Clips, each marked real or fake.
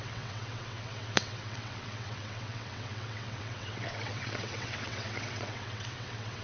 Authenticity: fake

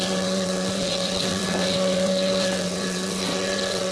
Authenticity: fake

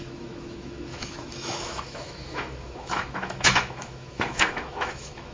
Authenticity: fake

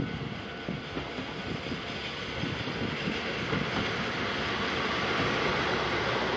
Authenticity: real